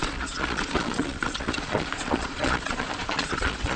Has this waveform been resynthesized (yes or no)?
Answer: yes